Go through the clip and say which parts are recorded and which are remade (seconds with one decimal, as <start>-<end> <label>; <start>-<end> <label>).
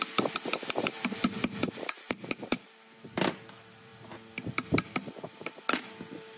0.0-0.5 recorded; 0.5-2.6 remade; 2.6-6.4 recorded